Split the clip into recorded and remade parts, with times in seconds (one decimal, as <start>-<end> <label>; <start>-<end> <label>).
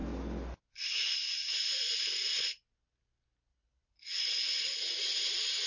0.0-3.5 recorded; 3.5-4.3 remade; 4.3-5.7 recorded